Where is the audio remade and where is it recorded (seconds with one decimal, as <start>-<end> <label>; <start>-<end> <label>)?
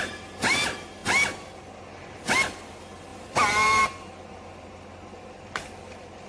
0.0-3.1 recorded; 3.1-3.8 remade; 3.8-6.3 recorded